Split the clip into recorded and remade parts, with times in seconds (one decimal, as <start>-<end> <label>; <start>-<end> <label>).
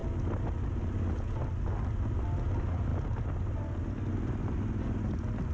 0.0-5.5 recorded